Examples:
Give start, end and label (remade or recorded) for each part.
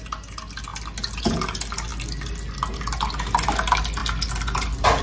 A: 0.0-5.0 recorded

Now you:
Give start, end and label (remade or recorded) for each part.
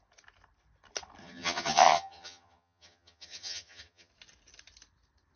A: 0.0-1.2 recorded; 1.2-4.1 remade; 4.1-5.4 recorded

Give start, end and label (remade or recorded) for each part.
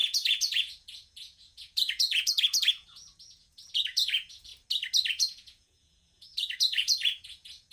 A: 0.0-4.5 remade; 4.5-5.1 recorded; 5.1-7.7 remade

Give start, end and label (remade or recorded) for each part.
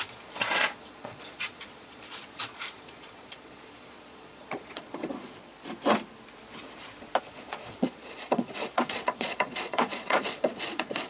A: 0.0-5.5 remade; 5.5-7.2 recorded; 7.2-11.1 remade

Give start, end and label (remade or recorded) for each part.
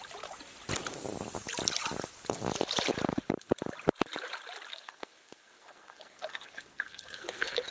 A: 0.0-4.7 recorded; 4.7-7.7 remade